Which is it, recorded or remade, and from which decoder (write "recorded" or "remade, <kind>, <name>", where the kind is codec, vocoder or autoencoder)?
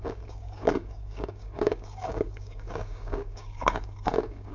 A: remade, codec, DAC